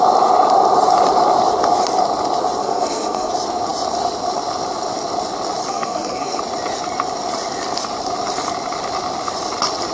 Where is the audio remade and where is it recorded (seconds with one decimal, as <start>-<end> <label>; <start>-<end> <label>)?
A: 0.0-2.6 recorded; 2.6-3.3 remade; 3.3-5.7 recorded; 5.7-6.4 remade; 6.4-9.9 recorded